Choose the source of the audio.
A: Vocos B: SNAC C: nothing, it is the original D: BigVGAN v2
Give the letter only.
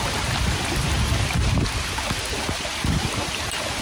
C